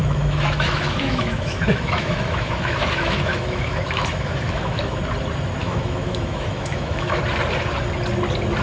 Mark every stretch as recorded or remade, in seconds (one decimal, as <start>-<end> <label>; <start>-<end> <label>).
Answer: 0.0-5.0 remade; 5.0-5.6 recorded; 5.6-7.2 remade; 7.2-8.6 recorded

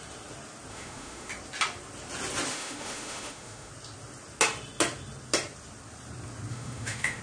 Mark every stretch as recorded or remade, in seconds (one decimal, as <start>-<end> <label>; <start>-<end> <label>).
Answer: 0.0-0.7 recorded; 0.7-1.3 remade; 1.3-2.5 recorded; 2.5-3.7 remade; 3.7-6.5 recorded; 6.5-7.2 remade

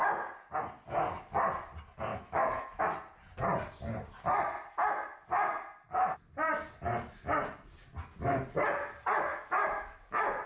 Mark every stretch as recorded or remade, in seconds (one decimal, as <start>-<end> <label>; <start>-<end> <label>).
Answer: 0.0-2.1 recorded; 2.1-2.8 remade; 2.8-9.3 recorded; 9.3-10.5 remade

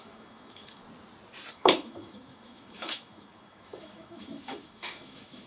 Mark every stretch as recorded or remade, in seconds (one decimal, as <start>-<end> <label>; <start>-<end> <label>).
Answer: 0.0-0.8 remade; 0.8-1.5 recorded; 1.5-5.5 remade

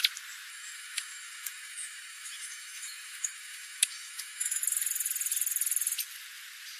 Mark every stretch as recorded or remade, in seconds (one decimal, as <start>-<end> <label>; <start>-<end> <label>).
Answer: 0.0-0.5 recorded; 0.5-4.6 remade; 4.6-6.8 recorded

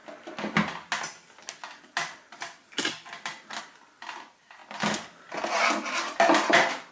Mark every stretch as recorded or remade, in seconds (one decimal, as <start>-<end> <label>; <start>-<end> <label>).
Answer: 0.0-6.9 recorded

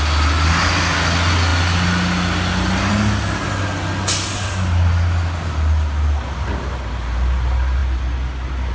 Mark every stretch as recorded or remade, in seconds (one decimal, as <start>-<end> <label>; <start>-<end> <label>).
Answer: 0.0-8.7 recorded